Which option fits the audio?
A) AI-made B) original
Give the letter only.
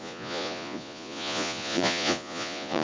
A